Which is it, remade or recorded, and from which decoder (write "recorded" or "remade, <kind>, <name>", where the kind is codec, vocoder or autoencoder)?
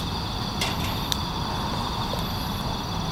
recorded